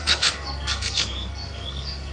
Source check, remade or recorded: remade